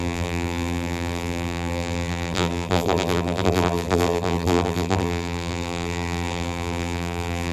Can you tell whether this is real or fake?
fake